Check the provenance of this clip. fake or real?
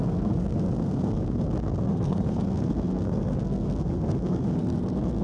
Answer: fake